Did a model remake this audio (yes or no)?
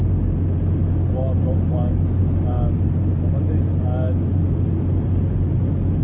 no